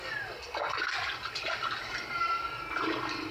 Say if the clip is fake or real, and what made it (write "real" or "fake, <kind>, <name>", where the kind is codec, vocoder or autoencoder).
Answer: real